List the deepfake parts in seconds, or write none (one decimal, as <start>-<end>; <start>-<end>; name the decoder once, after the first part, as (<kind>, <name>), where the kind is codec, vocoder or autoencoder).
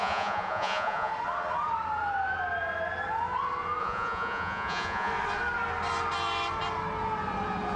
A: 0.0-1.1 (vocoder, Vocos); 3.8-5.1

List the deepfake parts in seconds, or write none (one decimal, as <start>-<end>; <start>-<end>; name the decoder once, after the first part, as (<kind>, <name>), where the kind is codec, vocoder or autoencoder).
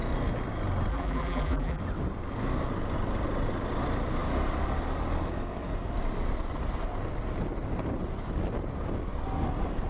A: 0.9-1.8 (vocoder, BigVGAN v2)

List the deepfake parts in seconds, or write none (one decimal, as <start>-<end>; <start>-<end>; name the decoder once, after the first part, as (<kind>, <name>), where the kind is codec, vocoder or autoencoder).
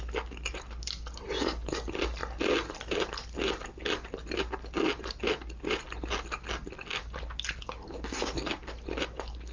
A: none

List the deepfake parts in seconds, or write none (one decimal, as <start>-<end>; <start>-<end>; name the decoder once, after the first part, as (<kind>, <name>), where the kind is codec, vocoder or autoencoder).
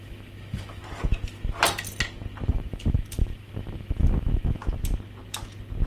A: 0.0-0.8 (autoencoder, DAC-VAE); 2.5-4.6